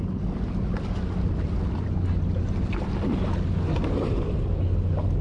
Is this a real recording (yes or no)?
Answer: yes